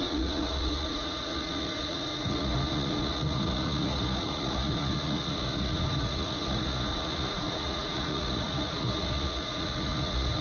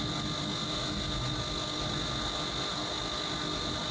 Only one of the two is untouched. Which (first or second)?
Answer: second